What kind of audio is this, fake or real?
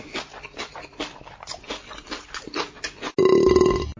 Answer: real